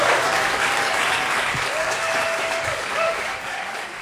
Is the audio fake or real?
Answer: fake